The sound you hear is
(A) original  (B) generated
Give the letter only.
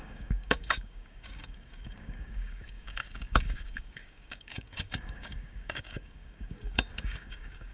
B